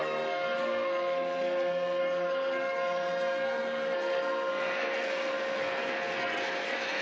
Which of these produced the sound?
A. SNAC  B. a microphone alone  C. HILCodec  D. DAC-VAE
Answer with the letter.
A